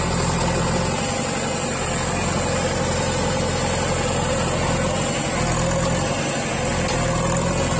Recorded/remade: recorded